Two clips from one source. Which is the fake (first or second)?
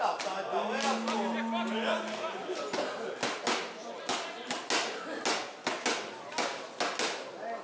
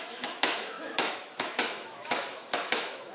second